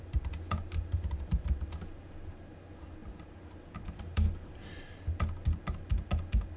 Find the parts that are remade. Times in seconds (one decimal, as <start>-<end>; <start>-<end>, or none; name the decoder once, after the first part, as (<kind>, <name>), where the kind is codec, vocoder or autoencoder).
none